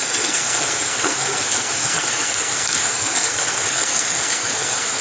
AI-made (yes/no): yes